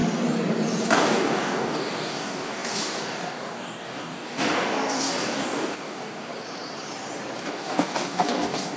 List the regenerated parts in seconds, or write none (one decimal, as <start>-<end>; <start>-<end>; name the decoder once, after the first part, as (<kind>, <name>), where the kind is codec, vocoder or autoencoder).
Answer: 0.8-6.3 (codec, DAC); 7.4-8.8